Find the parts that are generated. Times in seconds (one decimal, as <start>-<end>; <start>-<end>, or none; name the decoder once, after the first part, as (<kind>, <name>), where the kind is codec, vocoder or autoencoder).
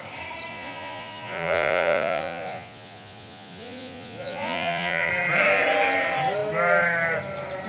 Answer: 0.5-5.1 (vocoder, Vocos)